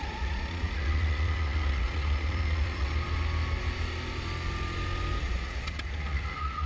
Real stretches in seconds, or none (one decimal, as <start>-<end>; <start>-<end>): 2.9-5.2